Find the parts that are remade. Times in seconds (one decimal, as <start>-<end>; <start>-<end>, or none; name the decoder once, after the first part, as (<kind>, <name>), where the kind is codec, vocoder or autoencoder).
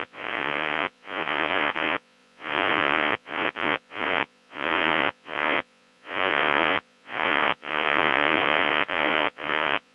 0.0-9.9 (vocoder, Vocos)